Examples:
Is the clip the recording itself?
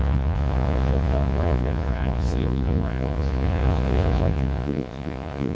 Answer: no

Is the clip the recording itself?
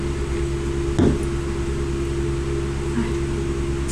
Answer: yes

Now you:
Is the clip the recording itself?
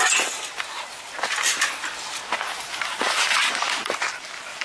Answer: yes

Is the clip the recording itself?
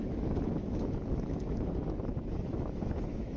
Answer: no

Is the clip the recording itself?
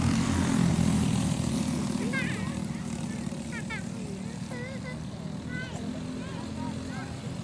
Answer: yes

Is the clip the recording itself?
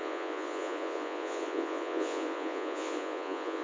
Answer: no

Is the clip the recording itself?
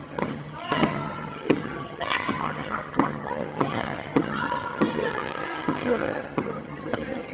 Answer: no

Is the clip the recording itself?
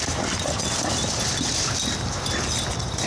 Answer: yes